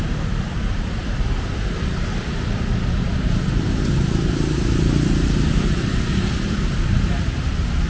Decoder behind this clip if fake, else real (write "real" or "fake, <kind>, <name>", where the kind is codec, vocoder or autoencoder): fake, vocoder, BigVGAN v2